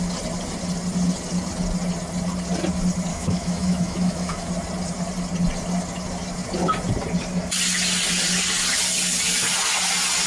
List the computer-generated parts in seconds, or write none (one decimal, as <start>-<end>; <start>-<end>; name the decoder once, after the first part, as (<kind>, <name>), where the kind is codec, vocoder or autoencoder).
3.1-4.5 (autoencoder, DAC-VAE)